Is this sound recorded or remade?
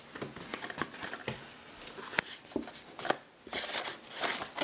recorded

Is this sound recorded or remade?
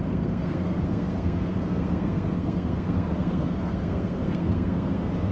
remade